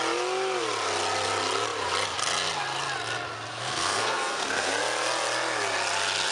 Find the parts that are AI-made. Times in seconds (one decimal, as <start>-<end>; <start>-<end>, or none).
3.5-4.7